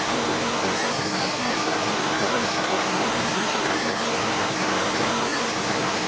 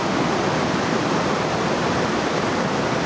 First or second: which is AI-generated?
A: first